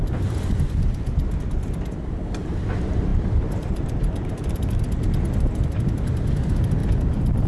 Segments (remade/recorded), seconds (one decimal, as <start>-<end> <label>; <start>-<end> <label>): 0.0-3.1 recorded; 3.1-4.8 remade; 4.8-7.5 recorded